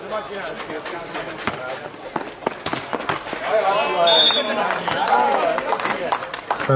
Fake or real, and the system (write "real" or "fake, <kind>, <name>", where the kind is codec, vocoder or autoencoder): real